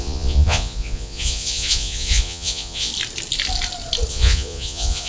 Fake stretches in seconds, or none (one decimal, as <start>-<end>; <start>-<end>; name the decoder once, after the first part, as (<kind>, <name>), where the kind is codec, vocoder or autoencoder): 0.0-2.9 (vocoder, Vocos); 4.1-5.1